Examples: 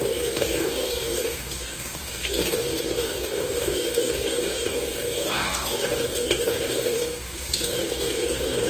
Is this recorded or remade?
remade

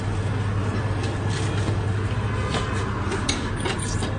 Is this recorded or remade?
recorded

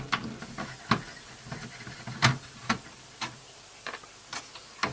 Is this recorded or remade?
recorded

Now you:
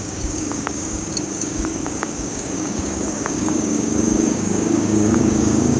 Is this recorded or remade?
remade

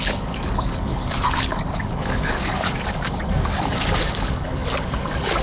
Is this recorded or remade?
remade